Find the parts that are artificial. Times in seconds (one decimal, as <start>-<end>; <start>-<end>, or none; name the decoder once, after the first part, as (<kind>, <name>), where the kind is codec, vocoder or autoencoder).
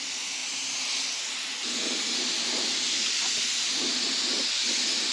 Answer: none